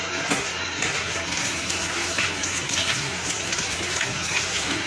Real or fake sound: fake